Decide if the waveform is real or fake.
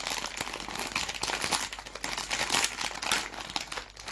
real